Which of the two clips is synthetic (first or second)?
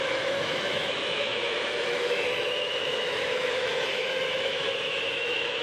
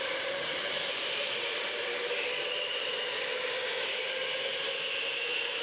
first